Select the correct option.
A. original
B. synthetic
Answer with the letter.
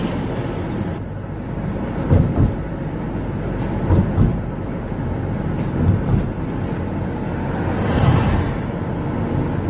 A